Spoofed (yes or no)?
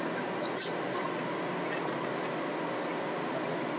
no